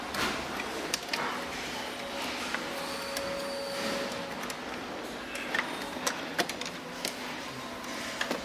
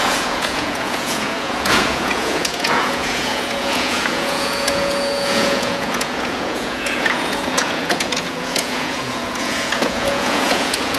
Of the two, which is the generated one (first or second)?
second